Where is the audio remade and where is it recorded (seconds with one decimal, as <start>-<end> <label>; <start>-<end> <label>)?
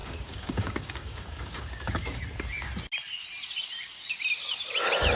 0.0-2.2 remade; 2.2-5.2 recorded